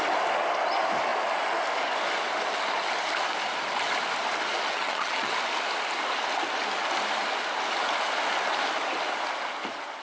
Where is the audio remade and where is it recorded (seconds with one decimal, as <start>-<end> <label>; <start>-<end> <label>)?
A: 0.0-4.7 recorded; 4.7-5.3 remade; 5.3-10.0 recorded